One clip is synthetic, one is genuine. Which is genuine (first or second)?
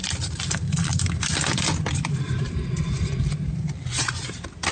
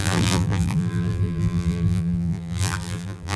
first